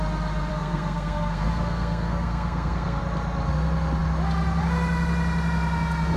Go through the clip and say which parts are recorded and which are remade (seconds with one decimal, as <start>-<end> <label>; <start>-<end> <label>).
0.0-0.5 recorded; 0.5-3.0 remade; 3.0-6.2 recorded